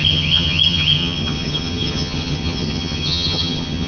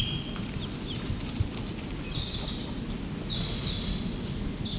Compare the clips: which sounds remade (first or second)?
first